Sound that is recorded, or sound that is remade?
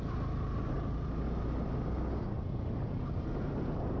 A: recorded